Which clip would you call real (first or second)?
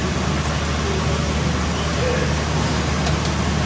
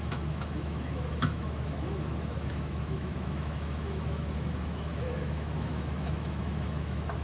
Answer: first